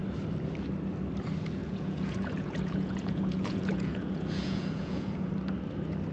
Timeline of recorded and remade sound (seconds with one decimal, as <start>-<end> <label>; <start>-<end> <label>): 0.0-1.6 recorded; 1.6-5.3 remade; 5.3-6.1 recorded